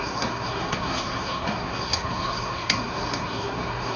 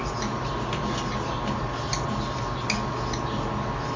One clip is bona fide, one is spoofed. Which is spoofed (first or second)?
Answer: first